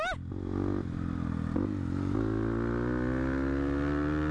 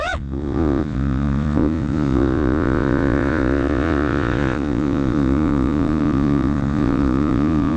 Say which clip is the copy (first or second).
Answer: second